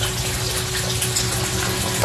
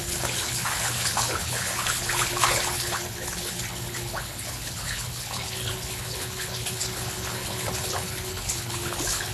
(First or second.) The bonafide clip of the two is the first